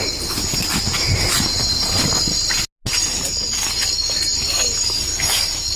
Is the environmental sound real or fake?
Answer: real